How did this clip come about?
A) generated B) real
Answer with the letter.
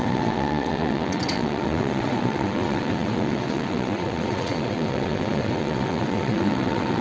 A